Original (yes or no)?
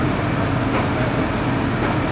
yes